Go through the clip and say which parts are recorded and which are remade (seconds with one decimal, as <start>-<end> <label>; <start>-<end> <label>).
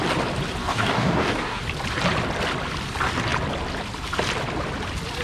0.0-0.6 recorded; 0.6-1.6 remade; 1.6-5.2 recorded